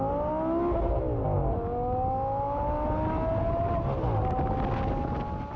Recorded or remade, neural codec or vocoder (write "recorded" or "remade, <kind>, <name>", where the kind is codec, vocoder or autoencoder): recorded